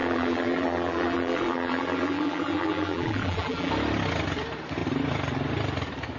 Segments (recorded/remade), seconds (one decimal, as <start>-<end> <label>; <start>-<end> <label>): 0.0-3.7 remade; 3.7-6.2 recorded